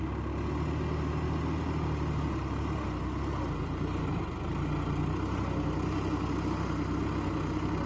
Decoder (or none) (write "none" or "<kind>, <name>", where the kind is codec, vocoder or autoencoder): none